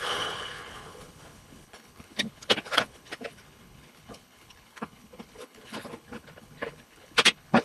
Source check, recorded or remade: remade